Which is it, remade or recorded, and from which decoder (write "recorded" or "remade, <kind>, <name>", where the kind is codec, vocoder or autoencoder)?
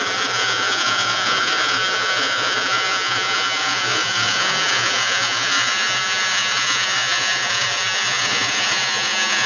remade, vocoder, Vocos